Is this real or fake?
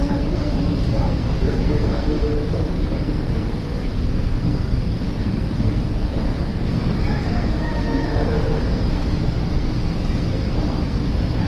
fake